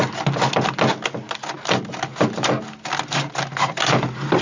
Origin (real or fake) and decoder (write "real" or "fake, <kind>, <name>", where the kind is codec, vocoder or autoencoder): real